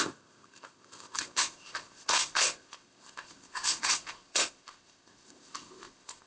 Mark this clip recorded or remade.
remade